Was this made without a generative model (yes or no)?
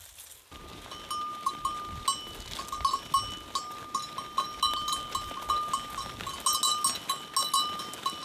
yes